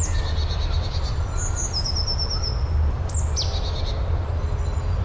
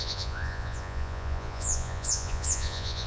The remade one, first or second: second